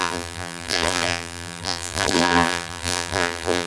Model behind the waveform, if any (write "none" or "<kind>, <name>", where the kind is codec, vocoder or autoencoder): vocoder, BigVGAN v2